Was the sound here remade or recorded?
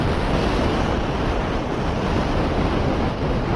recorded